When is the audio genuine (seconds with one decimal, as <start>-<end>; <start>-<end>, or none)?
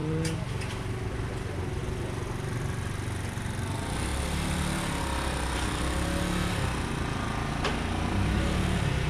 0.0-9.1